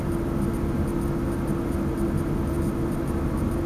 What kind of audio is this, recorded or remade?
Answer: recorded